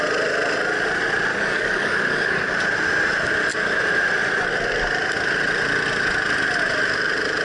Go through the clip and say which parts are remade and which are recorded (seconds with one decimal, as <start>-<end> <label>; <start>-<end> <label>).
0.0-1.3 recorded; 1.3-2.5 remade; 2.5-7.4 recorded